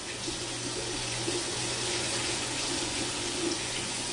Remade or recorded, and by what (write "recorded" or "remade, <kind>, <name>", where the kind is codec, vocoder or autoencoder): remade, vocoder, Vocos